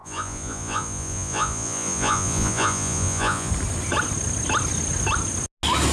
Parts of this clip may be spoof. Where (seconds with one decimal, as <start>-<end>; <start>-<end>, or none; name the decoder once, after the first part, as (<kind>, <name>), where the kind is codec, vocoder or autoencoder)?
0.0-3.5 (vocoder, Vocos)